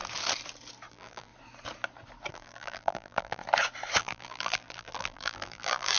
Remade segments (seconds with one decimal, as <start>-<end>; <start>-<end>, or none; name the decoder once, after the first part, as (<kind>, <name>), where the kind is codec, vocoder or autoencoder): 0.9-1.3 (vocoder, BigVGAN v2); 2.3-3.4; 4.0-6.0